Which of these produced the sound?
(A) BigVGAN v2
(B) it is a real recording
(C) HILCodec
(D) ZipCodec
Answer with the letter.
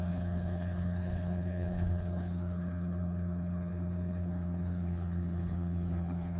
C